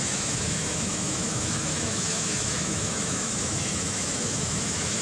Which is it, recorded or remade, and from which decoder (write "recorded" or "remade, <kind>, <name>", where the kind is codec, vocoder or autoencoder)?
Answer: remade, autoencoder, DAC-VAE